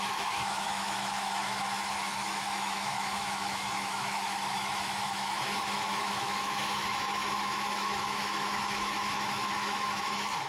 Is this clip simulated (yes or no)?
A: yes